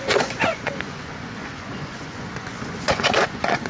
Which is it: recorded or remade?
remade